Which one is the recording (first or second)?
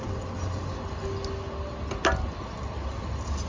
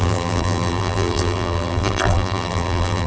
first